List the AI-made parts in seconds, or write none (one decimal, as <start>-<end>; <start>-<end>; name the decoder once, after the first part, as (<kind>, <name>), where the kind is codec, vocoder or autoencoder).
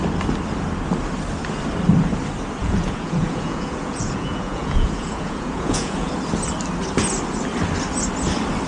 2.6-6.1 (vocoder, Vocos)